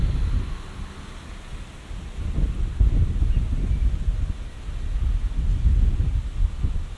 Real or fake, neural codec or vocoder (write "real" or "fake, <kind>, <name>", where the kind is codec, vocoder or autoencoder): real